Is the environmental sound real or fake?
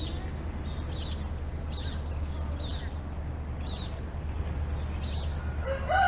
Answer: real